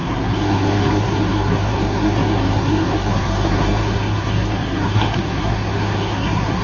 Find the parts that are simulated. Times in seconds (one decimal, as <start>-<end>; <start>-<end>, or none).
0.0-6.6